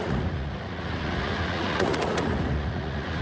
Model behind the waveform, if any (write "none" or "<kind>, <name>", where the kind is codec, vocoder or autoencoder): vocoder, Vocos